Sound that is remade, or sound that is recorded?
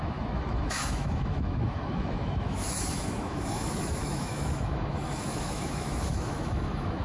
remade